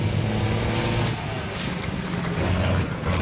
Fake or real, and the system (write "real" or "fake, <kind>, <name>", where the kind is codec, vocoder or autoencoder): real